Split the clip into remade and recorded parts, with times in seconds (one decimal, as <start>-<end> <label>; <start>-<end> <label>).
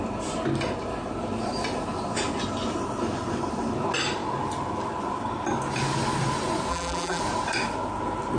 0.0-6.7 recorded; 6.7-7.2 remade; 7.2-8.4 recorded